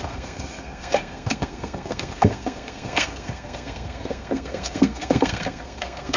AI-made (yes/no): yes